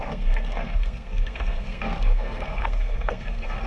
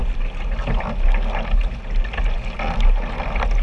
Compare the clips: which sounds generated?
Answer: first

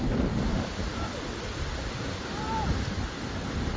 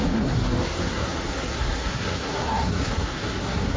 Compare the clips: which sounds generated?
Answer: second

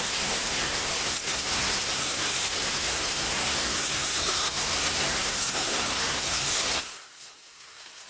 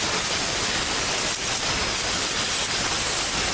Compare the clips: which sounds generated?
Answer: first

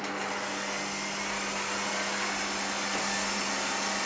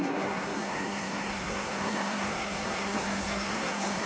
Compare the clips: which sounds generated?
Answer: second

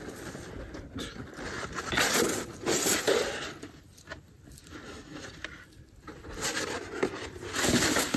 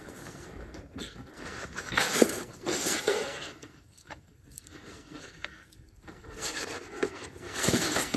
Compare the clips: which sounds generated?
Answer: second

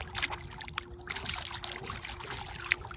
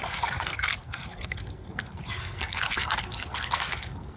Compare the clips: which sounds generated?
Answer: second